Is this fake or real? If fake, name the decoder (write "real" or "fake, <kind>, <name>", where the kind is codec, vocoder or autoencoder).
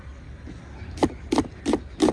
real